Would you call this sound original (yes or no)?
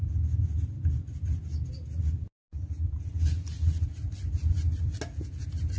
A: yes